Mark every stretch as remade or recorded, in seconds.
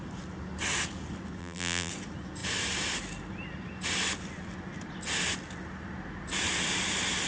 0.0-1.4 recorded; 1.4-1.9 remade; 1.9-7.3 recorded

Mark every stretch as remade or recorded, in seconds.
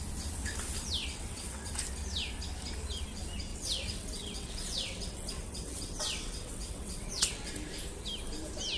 0.0-1.0 recorded; 1.0-1.7 remade; 1.7-3.5 recorded; 3.5-7.5 remade; 7.5-8.8 recorded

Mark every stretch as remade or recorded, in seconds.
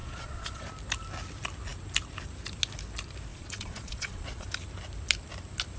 0.0-0.6 remade; 0.6-3.3 recorded; 3.3-4.5 remade; 4.5-5.8 recorded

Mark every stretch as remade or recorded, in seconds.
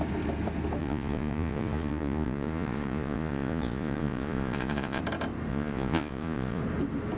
0.0-0.8 recorded; 0.8-5.0 remade; 5.0-5.5 recorded; 5.5-6.6 remade; 6.6-7.2 recorded